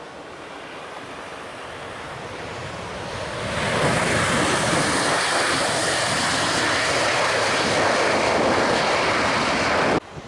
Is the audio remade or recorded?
recorded